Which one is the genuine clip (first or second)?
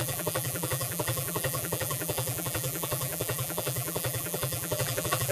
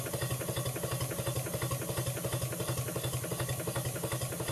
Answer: second